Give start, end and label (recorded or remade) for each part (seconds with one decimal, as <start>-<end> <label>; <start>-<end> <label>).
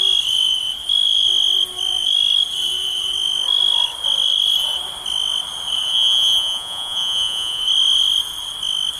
0.0-5.9 recorded; 5.9-7.6 remade; 7.6-9.0 recorded